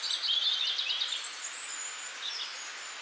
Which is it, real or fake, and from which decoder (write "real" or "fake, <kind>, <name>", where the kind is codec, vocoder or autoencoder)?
real